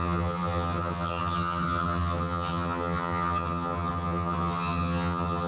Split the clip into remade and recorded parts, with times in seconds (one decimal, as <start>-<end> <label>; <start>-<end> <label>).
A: 0.0-5.5 remade